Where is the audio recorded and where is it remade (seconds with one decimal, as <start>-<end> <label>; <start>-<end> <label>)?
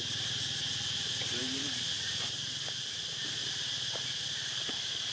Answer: 0.0-5.1 recorded